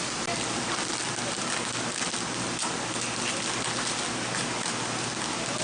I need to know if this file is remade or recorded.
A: recorded